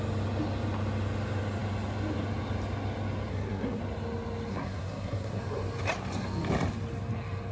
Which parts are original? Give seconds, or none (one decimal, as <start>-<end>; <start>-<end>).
0.0-3.3; 3.8-4.5; 5.4-7.5